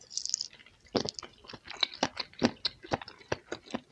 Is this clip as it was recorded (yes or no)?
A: yes